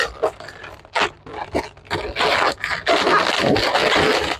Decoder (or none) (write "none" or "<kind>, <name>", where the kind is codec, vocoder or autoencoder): none